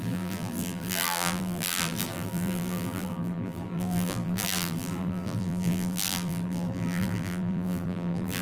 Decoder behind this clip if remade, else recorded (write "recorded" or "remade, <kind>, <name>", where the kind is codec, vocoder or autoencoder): remade, vocoder, BigVGAN v2